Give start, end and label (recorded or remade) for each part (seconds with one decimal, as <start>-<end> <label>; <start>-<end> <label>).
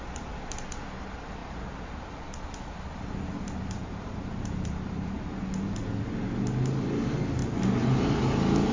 0.0-1.4 recorded; 1.4-2.1 remade; 2.1-3.8 recorded; 3.8-5.0 remade; 5.0-7.4 recorded; 7.4-8.2 remade; 8.2-8.7 recorded